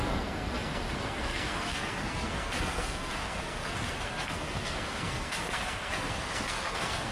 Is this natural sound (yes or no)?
no